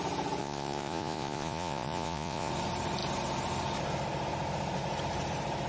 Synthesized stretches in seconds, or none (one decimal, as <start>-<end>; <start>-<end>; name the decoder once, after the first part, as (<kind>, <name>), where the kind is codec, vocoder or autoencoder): 0.4-2.5 (vocoder, Vocos)